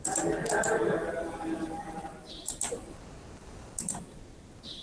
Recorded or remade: remade